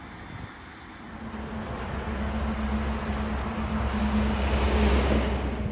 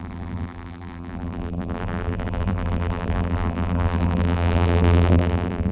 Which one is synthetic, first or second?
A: second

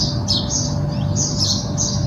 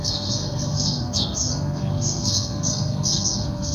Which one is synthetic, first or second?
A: second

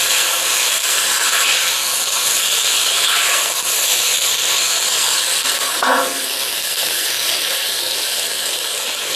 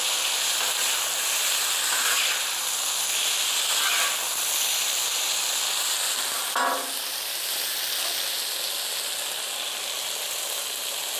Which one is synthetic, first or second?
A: first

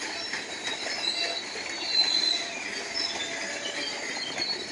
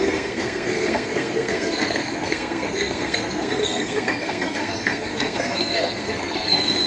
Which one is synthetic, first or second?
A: second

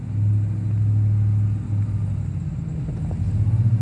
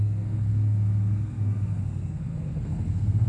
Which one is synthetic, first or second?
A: second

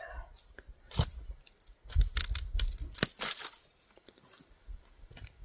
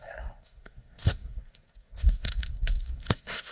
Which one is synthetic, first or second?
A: second